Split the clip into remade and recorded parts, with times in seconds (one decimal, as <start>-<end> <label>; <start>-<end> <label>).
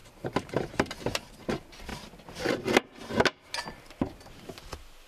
0.0-0.9 remade; 0.9-5.1 recorded